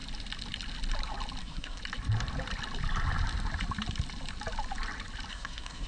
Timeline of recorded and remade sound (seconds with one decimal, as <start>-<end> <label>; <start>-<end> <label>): 0.0-1.4 recorded; 1.4-1.8 remade; 1.8-5.3 recorded; 5.3-5.9 remade